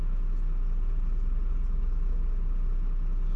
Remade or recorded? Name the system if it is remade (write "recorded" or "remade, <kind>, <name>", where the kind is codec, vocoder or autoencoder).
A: recorded